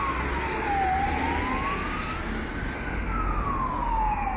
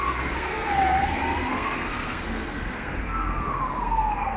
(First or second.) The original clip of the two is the first